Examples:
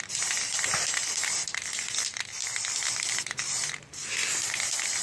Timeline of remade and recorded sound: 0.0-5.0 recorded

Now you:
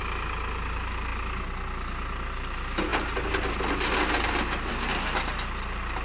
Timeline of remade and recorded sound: 0.0-6.0 recorded

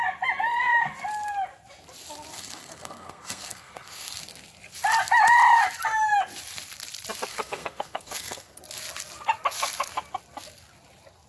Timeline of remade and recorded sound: 0.0-2.3 recorded; 2.3-4.2 remade; 4.2-7.3 recorded; 7.3-8.6 remade; 8.6-11.3 recorded

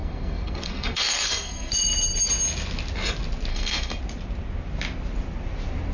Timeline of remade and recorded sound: 0.0-1.7 remade; 1.7-3.5 recorded; 3.5-4.0 remade; 4.0-5.9 recorded

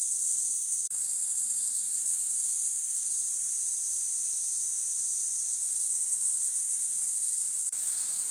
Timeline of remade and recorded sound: 0.0-3.1 remade; 3.1-5.5 recorded; 5.5-8.3 remade

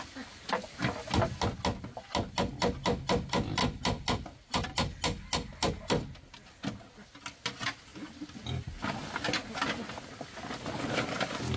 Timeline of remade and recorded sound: 0.0-11.6 recorded

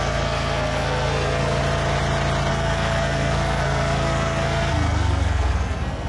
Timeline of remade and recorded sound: 0.0-1.6 remade; 1.6-2.5 recorded; 2.5-6.1 remade

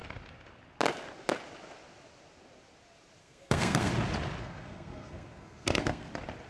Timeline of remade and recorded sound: 0.0-3.2 recorded; 3.2-3.9 remade; 3.9-4.4 recorded; 4.4-6.1 remade; 6.1-6.5 recorded